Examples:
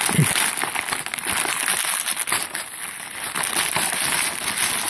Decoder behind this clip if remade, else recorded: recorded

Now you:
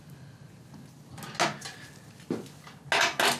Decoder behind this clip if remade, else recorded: recorded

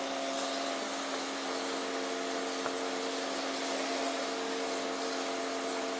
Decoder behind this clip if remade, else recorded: recorded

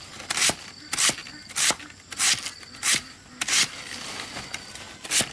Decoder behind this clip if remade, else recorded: recorded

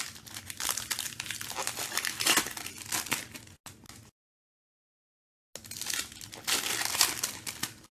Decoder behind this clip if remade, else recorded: recorded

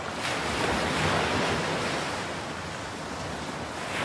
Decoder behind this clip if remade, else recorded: recorded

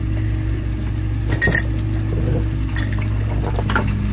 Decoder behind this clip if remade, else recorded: recorded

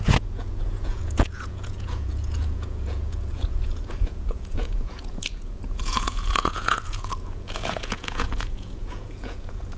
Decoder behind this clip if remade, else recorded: remade, vocoder, Vocos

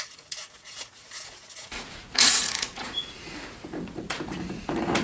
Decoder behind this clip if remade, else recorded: remade, vocoder, Vocos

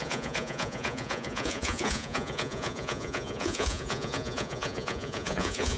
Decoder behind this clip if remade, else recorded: remade, vocoder, Vocos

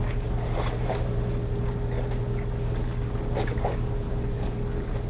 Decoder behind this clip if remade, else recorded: remade, codec, DAC